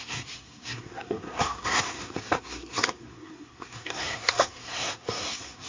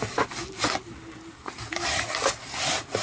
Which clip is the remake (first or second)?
first